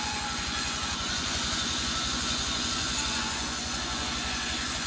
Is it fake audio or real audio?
fake